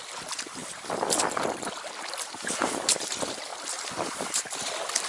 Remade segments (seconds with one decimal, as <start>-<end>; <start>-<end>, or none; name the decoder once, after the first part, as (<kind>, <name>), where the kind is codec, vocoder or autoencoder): 3.5-4.6 (vocoder, BigVGAN v2)